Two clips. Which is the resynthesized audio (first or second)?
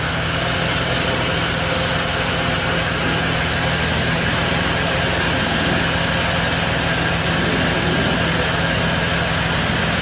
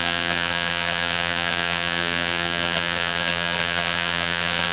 second